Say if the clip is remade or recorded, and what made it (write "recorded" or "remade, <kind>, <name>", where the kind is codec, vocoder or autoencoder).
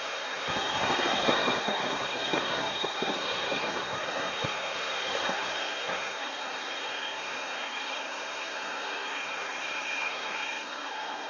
remade, codec, SNAC